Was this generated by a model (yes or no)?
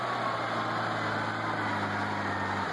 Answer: no